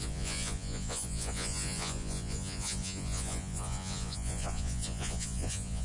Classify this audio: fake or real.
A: fake